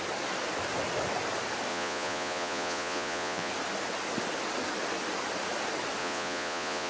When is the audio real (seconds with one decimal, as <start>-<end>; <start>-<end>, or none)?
0.0-1.7; 3.5-6.0